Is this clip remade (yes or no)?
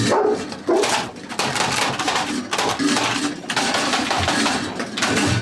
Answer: no